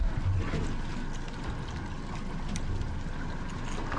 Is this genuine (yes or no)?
yes